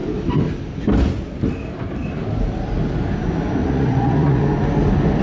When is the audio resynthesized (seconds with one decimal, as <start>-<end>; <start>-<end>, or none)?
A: 3.6-4.4